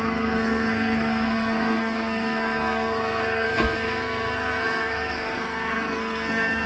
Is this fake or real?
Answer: fake